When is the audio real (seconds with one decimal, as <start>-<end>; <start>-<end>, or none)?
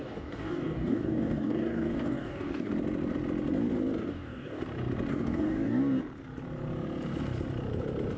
2.7-4.0; 4.6-5.1; 6.0-8.2